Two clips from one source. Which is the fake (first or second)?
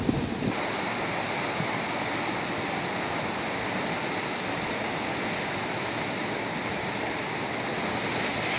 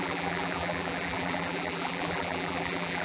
second